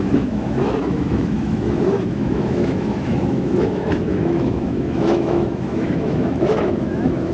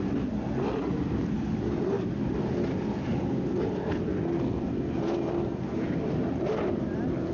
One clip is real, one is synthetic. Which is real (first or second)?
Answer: second